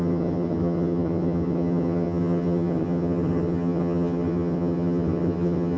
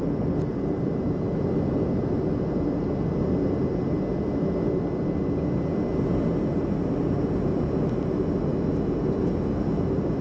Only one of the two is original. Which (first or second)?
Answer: second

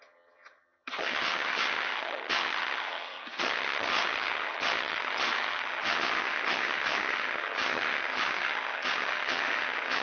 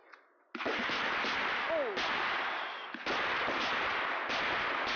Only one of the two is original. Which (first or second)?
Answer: second